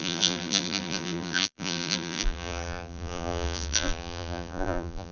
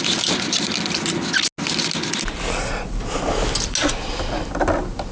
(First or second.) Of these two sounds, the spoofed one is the first